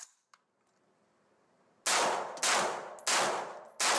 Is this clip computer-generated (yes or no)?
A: no